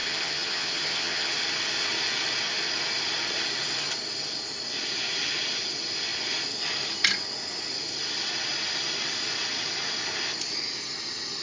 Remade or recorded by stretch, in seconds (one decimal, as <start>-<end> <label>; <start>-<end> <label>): 0.0-1.3 remade; 1.3-11.4 recorded